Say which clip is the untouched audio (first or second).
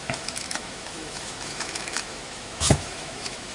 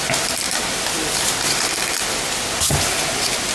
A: second